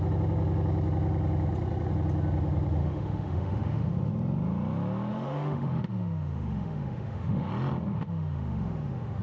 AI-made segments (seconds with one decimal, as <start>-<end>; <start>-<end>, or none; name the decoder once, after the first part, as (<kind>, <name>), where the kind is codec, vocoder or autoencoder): 2.8-4.1 (autoencoder, DAC-VAE); 5.1-7.5; 7.9-9.2